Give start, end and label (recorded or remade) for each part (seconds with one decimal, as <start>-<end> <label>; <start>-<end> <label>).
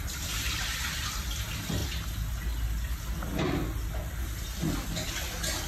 0.0-5.7 recorded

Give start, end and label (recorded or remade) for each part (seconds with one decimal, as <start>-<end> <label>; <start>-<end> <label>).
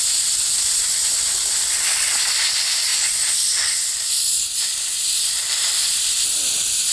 0.0-6.9 remade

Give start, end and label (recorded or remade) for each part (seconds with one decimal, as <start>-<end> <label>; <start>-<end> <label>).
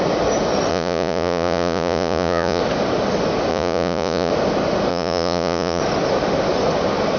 0.0-0.7 recorded; 0.7-2.6 remade; 2.6-3.5 recorded; 3.5-4.3 remade; 4.3-4.9 recorded; 4.9-5.8 remade; 5.8-7.2 recorded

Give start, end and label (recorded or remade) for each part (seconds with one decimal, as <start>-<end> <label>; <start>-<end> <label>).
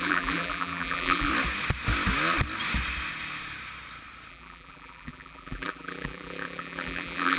0.0-1.3 remade; 1.3-4.3 recorded; 4.3-7.4 remade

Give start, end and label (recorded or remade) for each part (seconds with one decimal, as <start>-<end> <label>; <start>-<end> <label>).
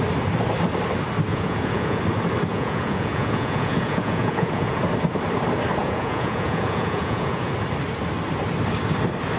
0.0-1.3 recorded; 1.3-2.0 remade; 2.0-2.5 recorded; 2.5-4.8 remade; 4.8-5.8 recorded; 5.8-7.5 remade; 7.5-9.4 recorded